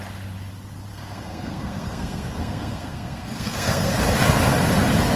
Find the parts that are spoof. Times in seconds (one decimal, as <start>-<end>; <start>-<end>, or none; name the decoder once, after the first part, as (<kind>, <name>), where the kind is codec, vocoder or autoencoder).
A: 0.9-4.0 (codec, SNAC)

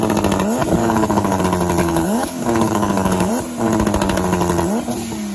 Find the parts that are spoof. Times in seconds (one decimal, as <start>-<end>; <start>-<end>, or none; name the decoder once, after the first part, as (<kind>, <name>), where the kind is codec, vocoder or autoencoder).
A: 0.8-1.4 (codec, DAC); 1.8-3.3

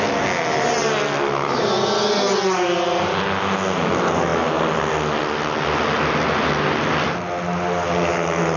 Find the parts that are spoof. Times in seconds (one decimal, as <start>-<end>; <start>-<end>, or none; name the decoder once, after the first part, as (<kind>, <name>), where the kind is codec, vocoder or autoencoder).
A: none

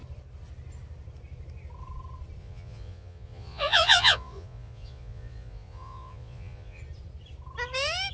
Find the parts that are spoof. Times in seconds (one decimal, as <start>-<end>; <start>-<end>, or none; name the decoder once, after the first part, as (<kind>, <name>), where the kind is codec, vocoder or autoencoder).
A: 2.4-6.8 (vocoder, Vocos)

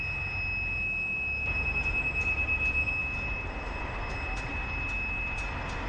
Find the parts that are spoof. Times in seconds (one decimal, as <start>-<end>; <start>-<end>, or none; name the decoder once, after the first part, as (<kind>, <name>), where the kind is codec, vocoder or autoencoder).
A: none

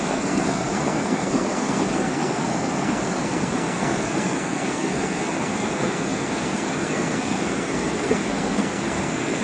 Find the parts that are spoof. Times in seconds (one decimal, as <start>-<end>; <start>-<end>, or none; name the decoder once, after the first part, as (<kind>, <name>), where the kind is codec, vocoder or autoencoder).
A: 0.0-9.4 (codec, SNAC)

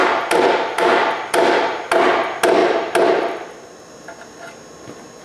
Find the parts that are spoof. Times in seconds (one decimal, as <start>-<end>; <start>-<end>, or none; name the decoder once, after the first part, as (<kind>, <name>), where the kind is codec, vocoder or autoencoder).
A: 0.0-2.1 (vocoder, BigVGAN v2); 2.6-3.9

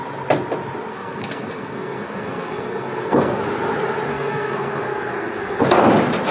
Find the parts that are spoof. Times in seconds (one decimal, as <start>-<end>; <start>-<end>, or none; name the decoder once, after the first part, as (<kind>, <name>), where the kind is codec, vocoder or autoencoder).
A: 0.9-3.4 (codec, SNAC); 4.1-5.6